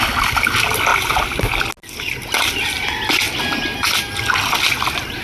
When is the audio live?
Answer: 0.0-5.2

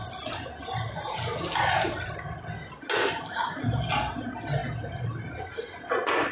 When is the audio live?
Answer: 0.0-6.3

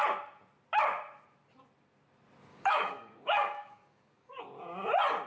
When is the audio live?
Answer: 0.0-2.5; 4.4-5.3

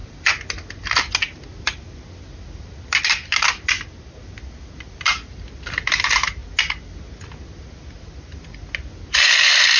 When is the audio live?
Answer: 0.0-9.8

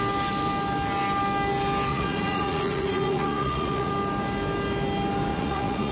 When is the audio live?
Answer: 0.0-1.9; 3.9-5.3